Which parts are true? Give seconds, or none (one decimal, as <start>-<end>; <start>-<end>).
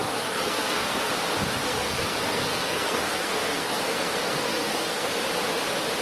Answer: 1.1-1.6; 5.2-6.0